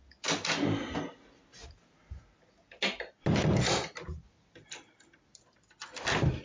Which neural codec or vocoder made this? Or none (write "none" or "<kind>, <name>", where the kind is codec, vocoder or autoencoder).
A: none